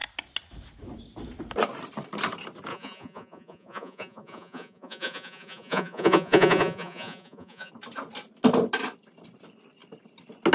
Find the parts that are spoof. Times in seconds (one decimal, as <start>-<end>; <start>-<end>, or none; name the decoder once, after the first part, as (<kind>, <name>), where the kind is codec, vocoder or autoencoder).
2.7-7.7 (vocoder, Vocos)